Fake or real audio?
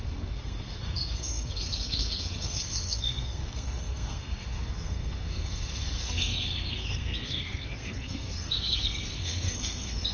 fake